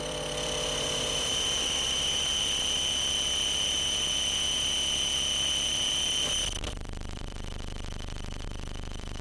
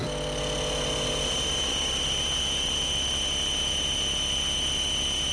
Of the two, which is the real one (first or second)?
second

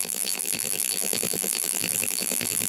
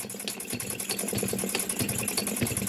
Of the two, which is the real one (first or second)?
second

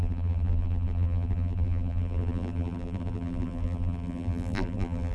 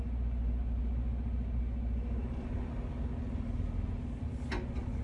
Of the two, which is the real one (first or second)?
second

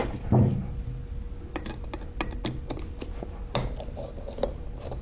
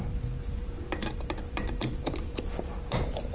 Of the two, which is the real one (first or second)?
first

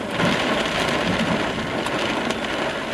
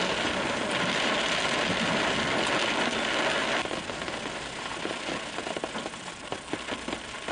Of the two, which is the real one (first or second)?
second